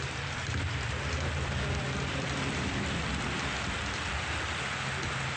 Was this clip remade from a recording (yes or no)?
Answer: yes